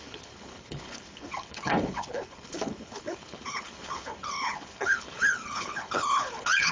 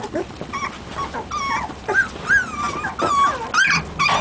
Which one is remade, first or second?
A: first